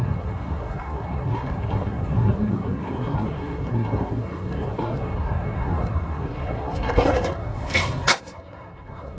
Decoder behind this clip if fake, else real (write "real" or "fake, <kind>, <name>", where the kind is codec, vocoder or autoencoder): fake, codec, SNAC